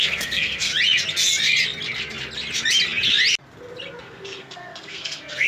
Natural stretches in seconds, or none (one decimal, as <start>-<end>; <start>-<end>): 0.7-4.0